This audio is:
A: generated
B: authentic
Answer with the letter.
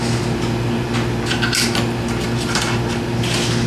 B